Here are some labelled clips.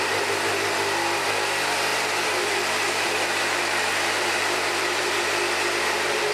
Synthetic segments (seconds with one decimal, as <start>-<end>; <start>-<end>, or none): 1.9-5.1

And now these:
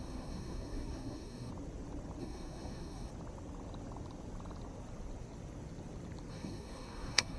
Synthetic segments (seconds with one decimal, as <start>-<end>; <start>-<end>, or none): 0.0-1.5; 2.2-3.1; 6.3-7.4

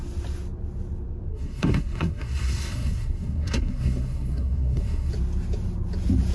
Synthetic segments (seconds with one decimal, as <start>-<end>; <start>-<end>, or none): 1.3-5.1

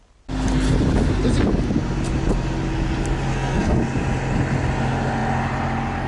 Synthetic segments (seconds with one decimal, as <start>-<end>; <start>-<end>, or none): 3.3-3.8

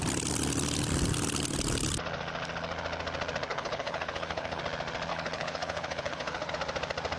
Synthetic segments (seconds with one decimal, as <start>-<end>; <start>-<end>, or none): 3.5-4.6; 5.1-6.5

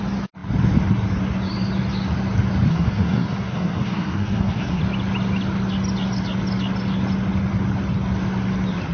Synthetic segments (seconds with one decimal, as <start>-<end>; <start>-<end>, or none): 2.7-4.8